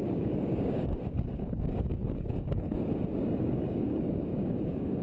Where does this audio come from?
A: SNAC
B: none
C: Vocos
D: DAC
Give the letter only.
D